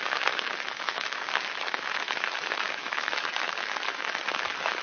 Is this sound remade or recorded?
remade